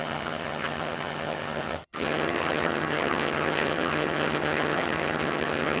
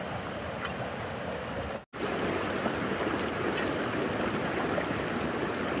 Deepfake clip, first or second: first